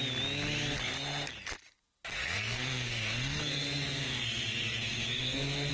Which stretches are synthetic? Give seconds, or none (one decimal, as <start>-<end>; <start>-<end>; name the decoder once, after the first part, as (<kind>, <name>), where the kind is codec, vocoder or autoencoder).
2.1-5.7 (codec, SNAC)